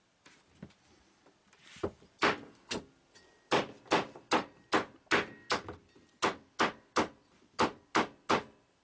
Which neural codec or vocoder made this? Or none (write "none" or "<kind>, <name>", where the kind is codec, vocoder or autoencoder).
none